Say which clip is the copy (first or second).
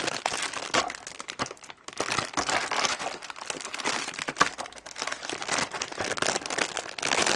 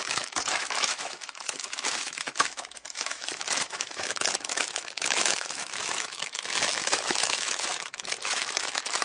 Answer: second